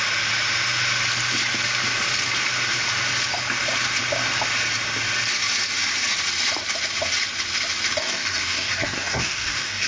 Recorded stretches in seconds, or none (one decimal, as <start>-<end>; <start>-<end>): 0.0-8.0